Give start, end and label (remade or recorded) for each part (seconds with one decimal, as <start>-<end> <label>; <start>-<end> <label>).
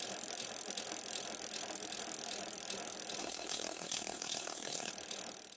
0.0-3.2 recorded; 3.2-4.9 remade; 4.9-5.6 recorded